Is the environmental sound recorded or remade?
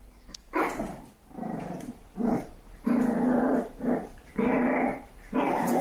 remade